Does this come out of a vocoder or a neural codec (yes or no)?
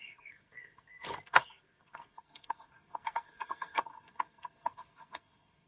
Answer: yes